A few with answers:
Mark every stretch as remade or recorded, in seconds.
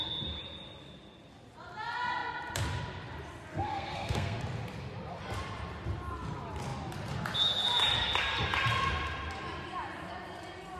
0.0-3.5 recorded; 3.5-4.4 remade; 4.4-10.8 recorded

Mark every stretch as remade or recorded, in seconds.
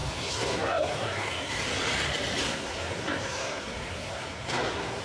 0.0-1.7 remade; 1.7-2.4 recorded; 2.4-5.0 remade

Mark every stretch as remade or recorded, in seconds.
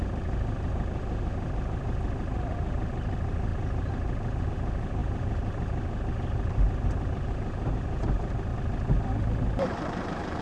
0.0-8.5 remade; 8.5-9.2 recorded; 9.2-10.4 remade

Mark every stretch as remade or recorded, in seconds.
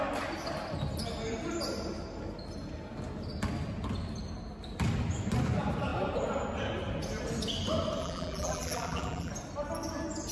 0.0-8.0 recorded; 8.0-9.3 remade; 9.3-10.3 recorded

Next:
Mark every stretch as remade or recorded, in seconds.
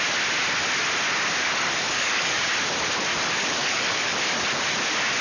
0.0-1.4 recorded; 1.4-2.5 remade; 2.5-3.6 recorded; 3.6-4.2 remade; 4.2-5.2 recorded